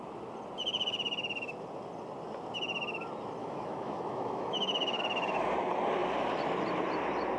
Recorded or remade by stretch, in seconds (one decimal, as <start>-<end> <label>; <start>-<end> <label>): 0.0-3.4 recorded; 3.4-5.0 remade; 5.0-7.4 recorded